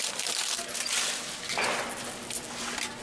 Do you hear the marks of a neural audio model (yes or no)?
no